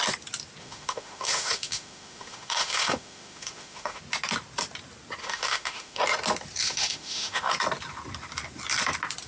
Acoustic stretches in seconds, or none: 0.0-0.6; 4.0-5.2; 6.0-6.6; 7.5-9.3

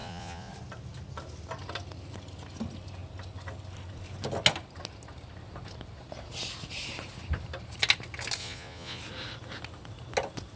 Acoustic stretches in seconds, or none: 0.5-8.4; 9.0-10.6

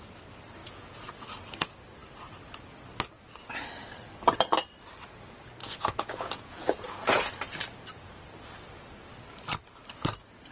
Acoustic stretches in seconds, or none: 0.0-0.6; 1.1-5.6; 7.3-10.5

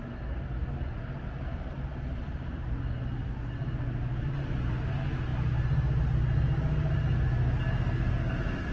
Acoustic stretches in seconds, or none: 0.0-8.7